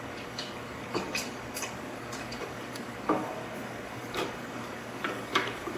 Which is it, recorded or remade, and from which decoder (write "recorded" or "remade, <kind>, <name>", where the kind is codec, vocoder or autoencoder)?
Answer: remade, codec, DAC